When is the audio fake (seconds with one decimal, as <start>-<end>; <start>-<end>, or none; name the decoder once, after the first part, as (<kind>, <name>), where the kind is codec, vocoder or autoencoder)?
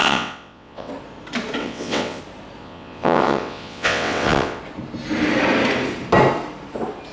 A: 0.0-0.9 (vocoder, WaveNeXt); 1.6-2.2; 2.6-4.6